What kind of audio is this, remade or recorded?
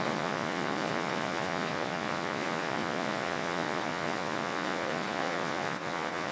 remade